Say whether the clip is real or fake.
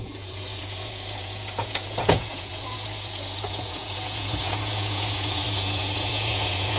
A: fake